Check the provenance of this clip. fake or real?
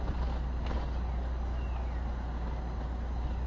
real